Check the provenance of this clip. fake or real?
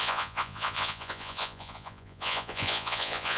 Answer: fake